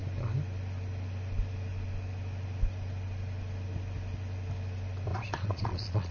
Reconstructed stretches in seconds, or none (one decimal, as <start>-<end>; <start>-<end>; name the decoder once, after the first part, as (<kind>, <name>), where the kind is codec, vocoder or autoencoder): 5.1-6.1 (vocoder, Vocos)